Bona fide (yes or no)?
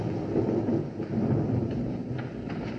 yes